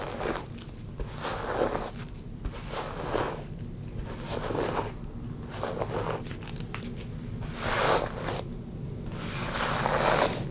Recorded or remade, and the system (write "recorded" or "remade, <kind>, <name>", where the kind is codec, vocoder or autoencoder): recorded